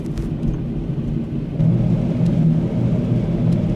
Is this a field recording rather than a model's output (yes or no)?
yes